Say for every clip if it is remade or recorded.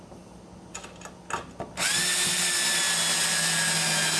recorded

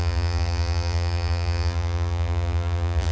remade